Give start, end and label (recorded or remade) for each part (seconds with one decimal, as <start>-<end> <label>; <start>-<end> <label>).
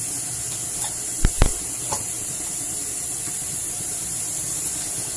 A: 0.0-1.5 recorded; 1.5-4.6 remade; 4.6-5.2 recorded